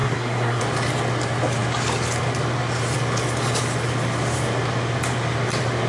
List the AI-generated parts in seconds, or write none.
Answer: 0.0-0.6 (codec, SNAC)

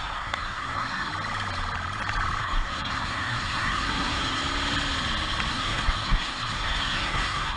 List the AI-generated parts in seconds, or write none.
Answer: 0.0-1.1 (codec, SNAC); 2.4-4.4; 5.5-7.6

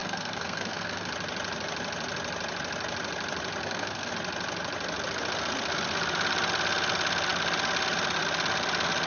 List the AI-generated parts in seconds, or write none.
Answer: 0.0-1.1 (codec, SNAC); 3.6-4.1

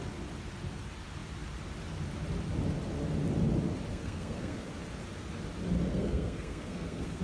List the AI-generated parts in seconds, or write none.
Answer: 3.9-4.7 (codec, SNAC); 5.9-7.2

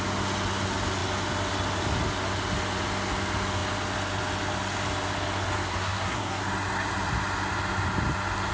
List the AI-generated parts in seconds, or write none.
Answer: 5.7-6.4 (codec, SNAC)

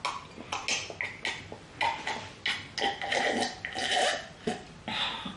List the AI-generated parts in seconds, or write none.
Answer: none